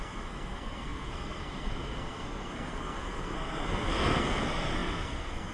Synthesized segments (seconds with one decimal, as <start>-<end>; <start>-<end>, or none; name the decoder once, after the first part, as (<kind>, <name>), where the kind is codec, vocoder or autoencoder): 0.0-5.5 (codec, SNAC)